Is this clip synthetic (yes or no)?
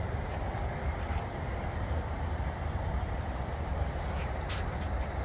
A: no